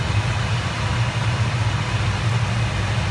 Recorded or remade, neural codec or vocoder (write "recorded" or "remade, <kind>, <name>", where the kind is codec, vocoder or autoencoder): recorded